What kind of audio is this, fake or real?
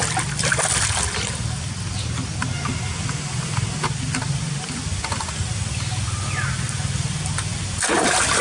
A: real